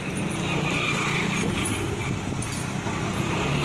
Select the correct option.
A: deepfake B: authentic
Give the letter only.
B